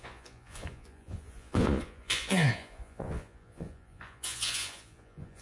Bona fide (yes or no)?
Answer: no